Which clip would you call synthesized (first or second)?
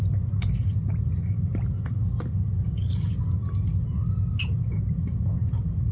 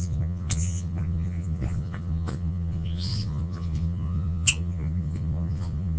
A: second